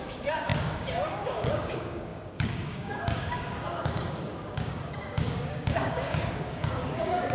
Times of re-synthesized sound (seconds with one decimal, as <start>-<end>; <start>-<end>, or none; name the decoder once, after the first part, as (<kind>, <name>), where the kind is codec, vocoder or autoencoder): 0.0-7.3 (codec, DAC)

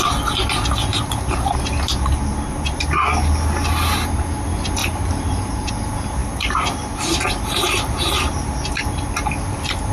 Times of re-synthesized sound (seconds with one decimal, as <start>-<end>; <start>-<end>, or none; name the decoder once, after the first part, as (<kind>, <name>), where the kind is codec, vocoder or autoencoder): 0.9-2.8 (vocoder, BigVGAN v2); 4.8-5.7; 6.2-8.1

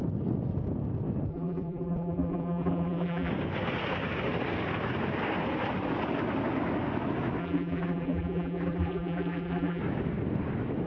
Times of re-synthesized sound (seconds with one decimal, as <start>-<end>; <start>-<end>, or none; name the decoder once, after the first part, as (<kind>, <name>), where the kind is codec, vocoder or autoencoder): 1.3-3.3 (vocoder, BigVGAN v2); 7.4-9.8

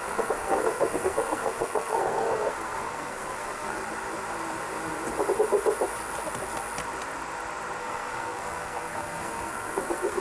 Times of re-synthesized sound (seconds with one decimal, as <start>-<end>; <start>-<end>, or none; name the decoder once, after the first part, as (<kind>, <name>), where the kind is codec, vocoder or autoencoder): 0.0-3.8 (codec, SNAC); 7.8-10.2

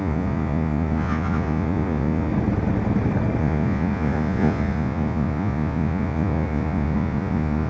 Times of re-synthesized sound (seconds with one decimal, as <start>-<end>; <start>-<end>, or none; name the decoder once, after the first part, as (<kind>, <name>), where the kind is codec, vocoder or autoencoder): 0.0-2.3 (vocoder, Vocos); 3.4-7.7